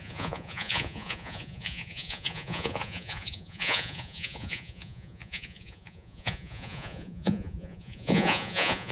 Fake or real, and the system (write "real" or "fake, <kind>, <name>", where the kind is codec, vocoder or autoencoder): fake, vocoder, Vocos